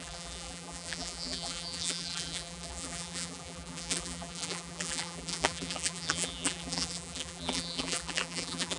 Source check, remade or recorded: remade